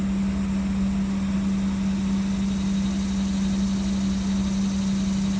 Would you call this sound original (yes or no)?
yes